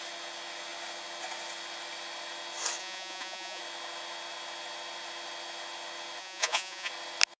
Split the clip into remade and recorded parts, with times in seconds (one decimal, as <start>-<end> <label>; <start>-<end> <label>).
0.0-2.8 recorded; 2.8-3.6 remade; 3.6-6.2 recorded; 6.2-6.9 remade; 6.9-7.4 recorded